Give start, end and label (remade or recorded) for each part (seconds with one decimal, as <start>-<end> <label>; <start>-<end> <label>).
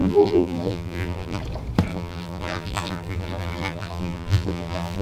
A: 0.0-1.4 remade; 1.4-1.9 recorded; 1.9-5.0 remade